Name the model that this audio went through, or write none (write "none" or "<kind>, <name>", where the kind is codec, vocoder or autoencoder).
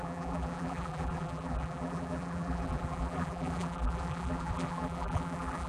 vocoder, BigVGAN v2